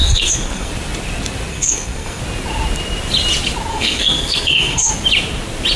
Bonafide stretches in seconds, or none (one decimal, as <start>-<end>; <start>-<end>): 0.7-1.5; 2.2-3.7; 4.9-5.8